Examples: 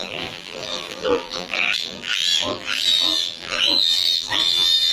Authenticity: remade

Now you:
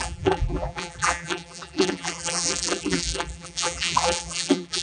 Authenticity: remade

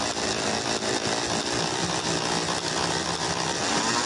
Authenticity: recorded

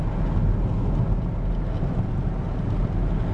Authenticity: recorded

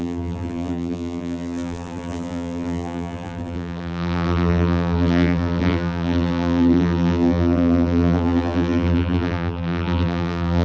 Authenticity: remade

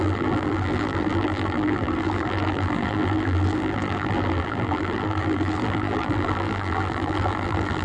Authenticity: remade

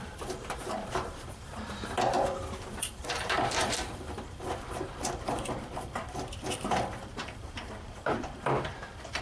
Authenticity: remade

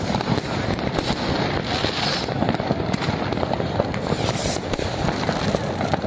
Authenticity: remade